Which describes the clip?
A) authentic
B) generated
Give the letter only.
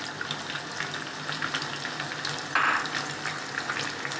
A